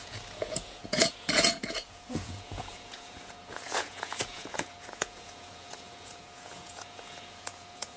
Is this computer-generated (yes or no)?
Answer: yes